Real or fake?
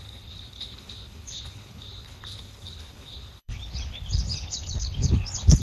fake